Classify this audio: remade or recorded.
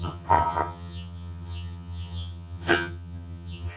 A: remade